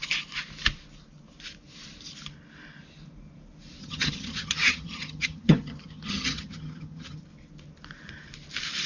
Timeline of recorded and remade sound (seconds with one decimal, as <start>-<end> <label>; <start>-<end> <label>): 0.0-3.8 recorded; 3.8-7.2 remade; 7.2-8.9 recorded